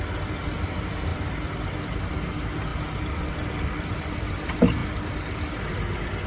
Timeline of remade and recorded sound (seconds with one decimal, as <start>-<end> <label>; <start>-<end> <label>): 0.0-6.3 recorded